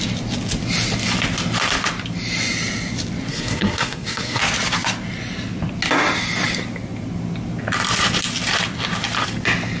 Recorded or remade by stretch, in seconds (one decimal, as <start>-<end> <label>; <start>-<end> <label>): 0.0-3.3 recorded; 3.3-4.4 remade; 4.4-9.8 recorded